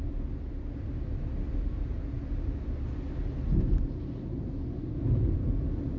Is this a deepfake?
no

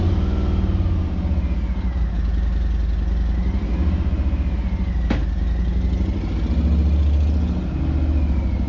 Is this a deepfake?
no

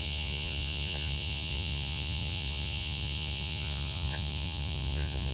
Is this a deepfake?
yes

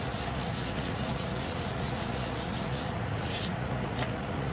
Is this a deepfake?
yes